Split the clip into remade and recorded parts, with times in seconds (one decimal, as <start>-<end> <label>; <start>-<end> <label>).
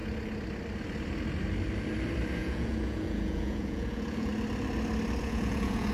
0.0-2.4 recorded; 2.4-4.3 remade; 4.3-5.2 recorded; 5.2-5.9 remade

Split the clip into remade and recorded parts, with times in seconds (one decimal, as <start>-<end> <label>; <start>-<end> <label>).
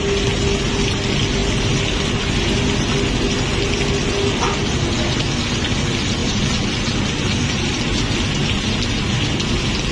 0.0-9.9 recorded